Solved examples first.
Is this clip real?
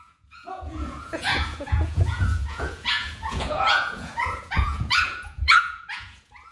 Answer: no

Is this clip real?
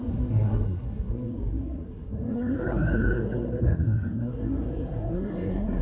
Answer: no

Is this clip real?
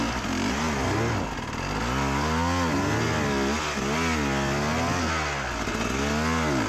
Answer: yes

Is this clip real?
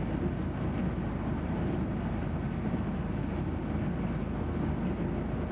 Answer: yes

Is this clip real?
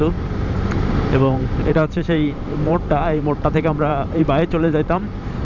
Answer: no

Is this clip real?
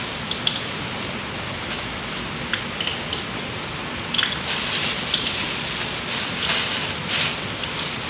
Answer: yes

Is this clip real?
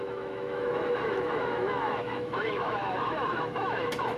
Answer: no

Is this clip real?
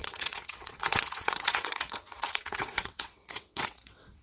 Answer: no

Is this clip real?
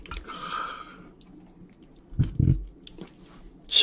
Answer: yes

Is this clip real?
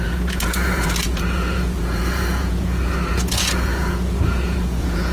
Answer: no